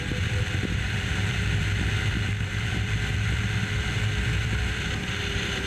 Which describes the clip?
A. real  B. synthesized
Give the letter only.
B